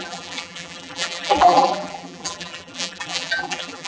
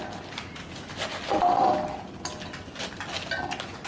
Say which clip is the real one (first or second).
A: second